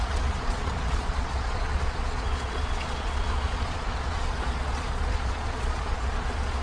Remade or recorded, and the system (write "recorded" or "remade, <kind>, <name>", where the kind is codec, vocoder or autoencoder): remade, vocoder, Vocos